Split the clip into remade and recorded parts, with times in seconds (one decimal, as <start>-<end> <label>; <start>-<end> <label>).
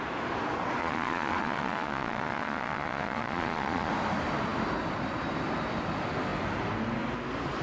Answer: 0.0-0.8 recorded; 0.8-3.9 remade; 3.9-7.6 recorded